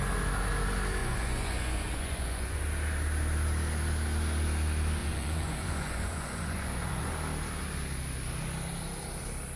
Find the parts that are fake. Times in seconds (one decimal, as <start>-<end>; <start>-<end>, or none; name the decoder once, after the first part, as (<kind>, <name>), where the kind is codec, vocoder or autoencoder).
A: 1.0-2.6 (vocoder, Vocos); 5.0-7.1